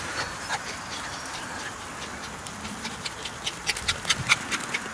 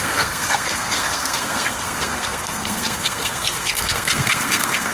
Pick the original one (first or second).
first